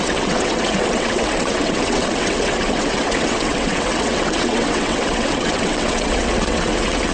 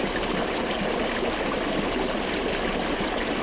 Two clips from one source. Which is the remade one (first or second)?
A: first